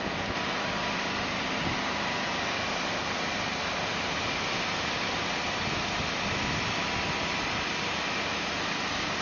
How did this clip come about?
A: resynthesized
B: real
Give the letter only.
B